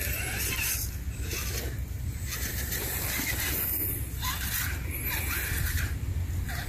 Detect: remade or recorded recorded